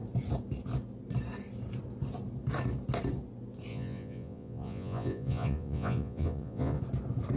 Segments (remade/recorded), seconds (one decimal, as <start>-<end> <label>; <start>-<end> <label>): 0.0-3.7 recorded; 3.7-6.8 remade; 6.8-7.4 recorded